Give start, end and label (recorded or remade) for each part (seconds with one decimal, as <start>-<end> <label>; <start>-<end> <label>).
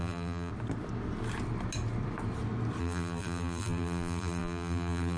0.0-0.5 remade; 0.5-2.8 recorded; 2.8-5.2 remade